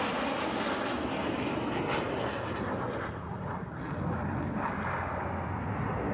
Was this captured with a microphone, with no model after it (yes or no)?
yes